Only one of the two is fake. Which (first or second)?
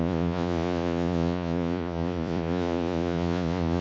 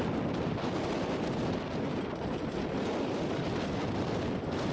first